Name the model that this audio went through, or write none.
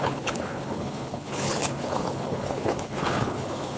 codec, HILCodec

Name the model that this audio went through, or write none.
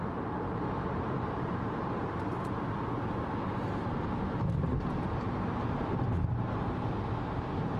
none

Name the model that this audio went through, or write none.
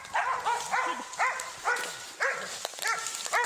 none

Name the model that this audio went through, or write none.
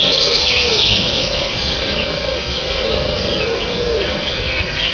codec, SNAC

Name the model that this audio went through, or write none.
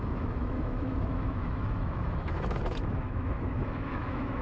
autoencoder, DAC-VAE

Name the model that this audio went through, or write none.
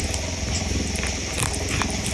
none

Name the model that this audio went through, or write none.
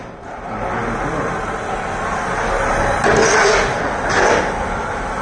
none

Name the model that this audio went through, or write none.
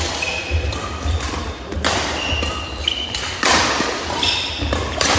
none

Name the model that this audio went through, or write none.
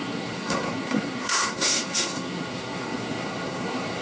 codec, SNAC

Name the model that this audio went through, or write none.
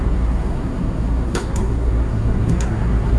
codec, SNAC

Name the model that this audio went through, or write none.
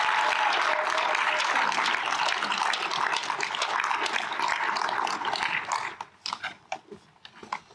none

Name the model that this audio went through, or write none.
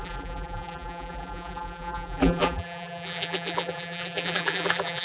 vocoder, BigVGAN v2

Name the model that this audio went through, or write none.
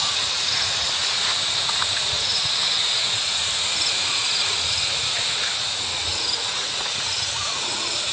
vocoder, Vocos